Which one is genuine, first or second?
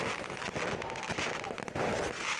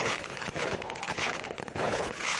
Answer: first